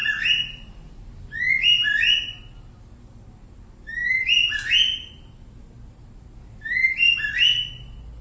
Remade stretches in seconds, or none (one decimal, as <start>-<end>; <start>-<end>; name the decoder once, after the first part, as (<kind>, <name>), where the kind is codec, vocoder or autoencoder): none